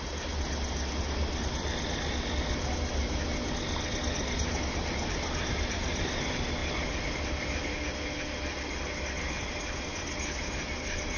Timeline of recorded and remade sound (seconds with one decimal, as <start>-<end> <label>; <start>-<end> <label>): 0.0-11.2 recorded